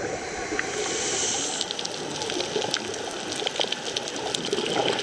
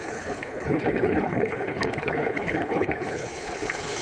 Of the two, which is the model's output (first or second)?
second